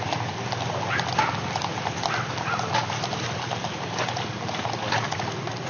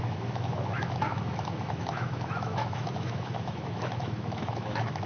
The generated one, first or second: second